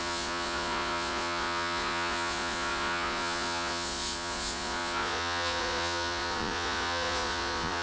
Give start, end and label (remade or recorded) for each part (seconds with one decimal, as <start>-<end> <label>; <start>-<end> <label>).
0.0-7.8 remade